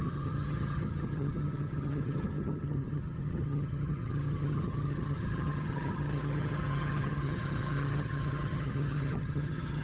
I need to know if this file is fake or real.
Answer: fake